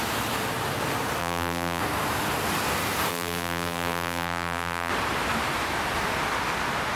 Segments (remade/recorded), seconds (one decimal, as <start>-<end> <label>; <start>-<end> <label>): 0.0-1.2 recorded; 1.2-1.8 remade; 1.8-3.1 recorded; 3.1-4.9 remade; 4.9-7.0 recorded